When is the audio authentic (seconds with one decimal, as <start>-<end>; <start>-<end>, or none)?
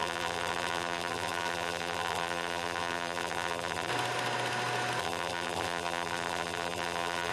3.9-5.0